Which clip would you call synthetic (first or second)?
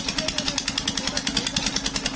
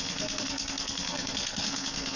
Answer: second